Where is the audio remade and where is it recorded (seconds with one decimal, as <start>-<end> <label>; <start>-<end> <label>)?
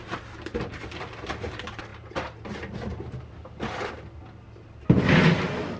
0.0-5.8 recorded